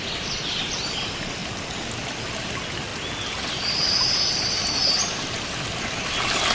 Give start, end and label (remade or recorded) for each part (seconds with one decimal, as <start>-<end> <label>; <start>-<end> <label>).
0.0-6.5 recorded